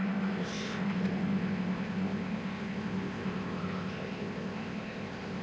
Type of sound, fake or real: fake